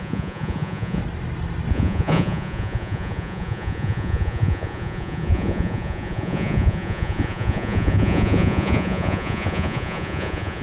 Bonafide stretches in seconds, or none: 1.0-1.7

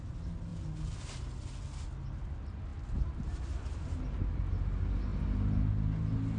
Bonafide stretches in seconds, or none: 0.0-6.4

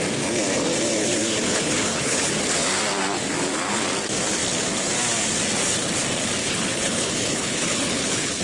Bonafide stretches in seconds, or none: 0.0-1.0; 2.3-6.4

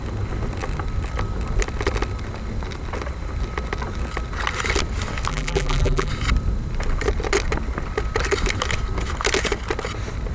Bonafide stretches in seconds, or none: 0.0-5.3; 6.1-10.3

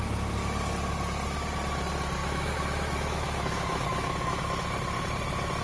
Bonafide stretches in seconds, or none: 0.0-2.2; 4.5-5.6